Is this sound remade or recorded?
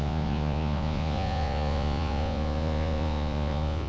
remade